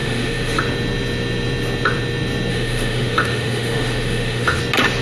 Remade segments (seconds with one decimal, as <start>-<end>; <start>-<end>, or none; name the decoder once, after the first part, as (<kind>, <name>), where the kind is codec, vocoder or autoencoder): 0.0-0.6 (autoencoder, DAC-VAE); 2.5-4.6